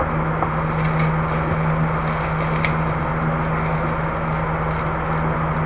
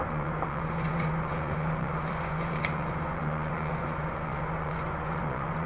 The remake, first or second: second